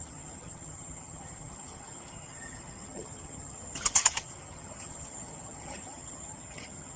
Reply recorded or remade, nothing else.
remade